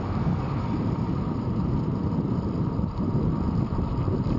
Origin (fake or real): real